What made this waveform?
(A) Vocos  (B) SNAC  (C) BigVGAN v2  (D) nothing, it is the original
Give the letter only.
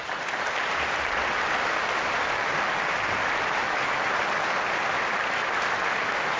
D